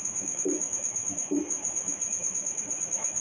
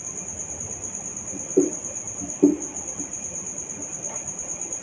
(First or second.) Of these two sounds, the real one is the second